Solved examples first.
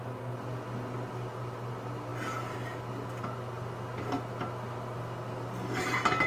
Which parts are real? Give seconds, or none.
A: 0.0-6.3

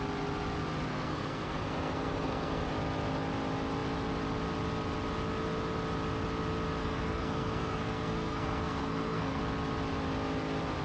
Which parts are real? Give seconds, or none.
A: 0.0-0.9; 2.7-6.8; 9.4-10.8

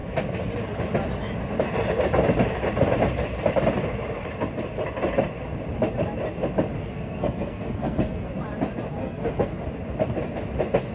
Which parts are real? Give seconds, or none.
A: 0.0-6.8; 8.3-9.0; 9.6-10.9

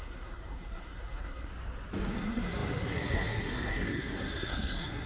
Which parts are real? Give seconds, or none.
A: 1.5-2.1